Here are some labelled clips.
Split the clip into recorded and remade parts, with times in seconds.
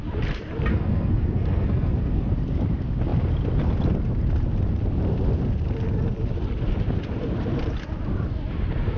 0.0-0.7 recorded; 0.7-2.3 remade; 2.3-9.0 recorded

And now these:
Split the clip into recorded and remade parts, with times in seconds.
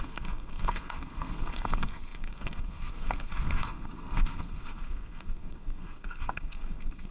0.0-7.1 remade